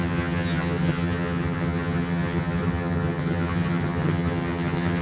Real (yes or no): no